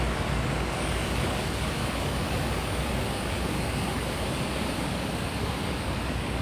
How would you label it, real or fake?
fake